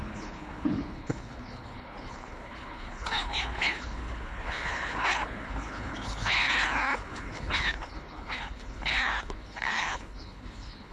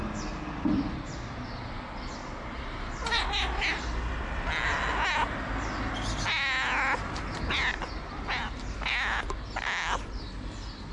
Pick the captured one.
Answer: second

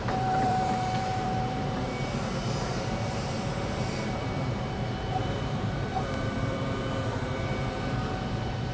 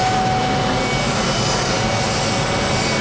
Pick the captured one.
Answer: second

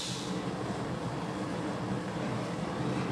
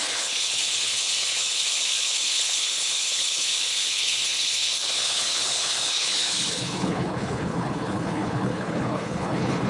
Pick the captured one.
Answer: first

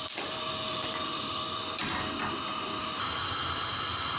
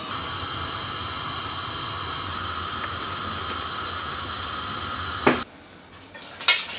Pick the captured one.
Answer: second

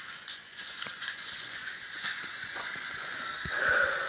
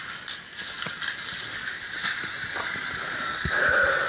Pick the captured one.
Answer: second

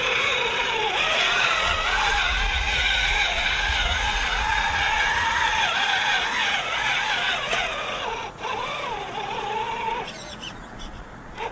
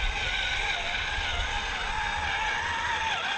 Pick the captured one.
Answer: second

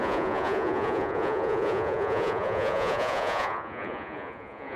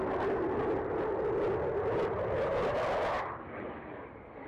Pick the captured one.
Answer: second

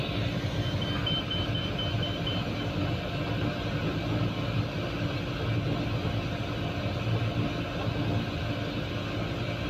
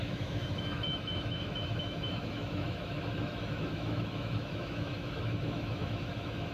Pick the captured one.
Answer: first